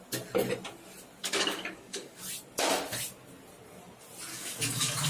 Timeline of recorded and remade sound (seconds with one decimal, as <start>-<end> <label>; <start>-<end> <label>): 0.0-1.2 recorded; 1.2-2.2 remade; 2.2-4.3 recorded; 4.3-5.1 remade